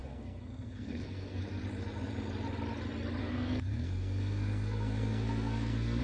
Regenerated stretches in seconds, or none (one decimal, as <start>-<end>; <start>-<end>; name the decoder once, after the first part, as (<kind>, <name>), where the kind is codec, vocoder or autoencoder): 0.0-1.4 (codec, SNAC); 3.2-6.0